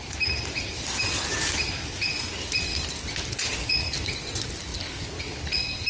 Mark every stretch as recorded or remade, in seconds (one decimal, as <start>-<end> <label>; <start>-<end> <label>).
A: 0.0-2.0 remade; 2.0-5.9 recorded